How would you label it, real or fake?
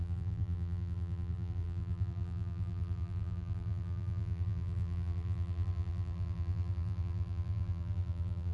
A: fake